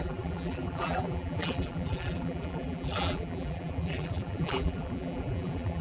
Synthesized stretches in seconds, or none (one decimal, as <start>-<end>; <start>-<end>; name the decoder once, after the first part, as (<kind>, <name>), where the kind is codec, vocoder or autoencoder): 0.0-5.8 (vocoder, BigVGAN v2)